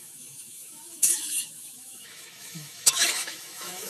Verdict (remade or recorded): remade